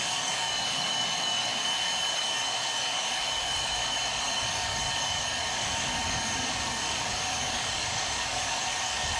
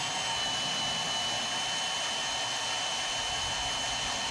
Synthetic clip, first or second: first